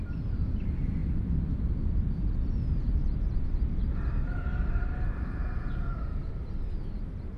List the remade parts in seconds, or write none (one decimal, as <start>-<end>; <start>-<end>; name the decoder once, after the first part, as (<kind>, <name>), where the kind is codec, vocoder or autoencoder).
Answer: 5.4-6.3 (vocoder, Vocos)